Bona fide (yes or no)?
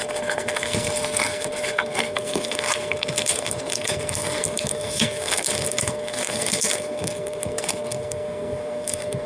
no